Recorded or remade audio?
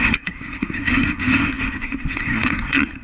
remade